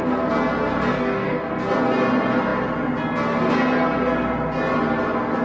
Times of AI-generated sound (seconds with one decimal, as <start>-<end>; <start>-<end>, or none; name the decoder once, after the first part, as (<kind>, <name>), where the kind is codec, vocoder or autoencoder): 0.9-1.5 (codec, DAC)